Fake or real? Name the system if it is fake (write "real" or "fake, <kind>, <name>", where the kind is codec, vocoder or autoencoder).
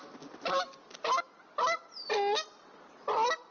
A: real